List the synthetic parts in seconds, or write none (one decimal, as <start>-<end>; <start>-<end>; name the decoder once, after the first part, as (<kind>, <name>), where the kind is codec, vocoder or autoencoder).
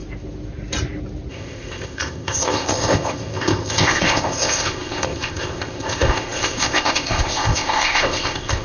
1.3-8.6 (codec, ZipCodec)